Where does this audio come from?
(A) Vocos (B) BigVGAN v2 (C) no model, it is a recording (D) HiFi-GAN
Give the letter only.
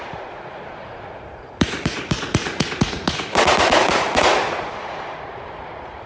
A